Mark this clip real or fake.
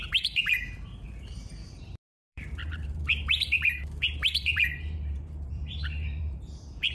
fake